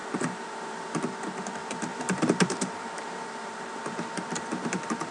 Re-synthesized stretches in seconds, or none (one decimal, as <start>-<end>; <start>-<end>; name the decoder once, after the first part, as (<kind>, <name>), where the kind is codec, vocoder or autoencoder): 0.0-1.0 (vocoder, BigVGAN v2); 1.9-5.1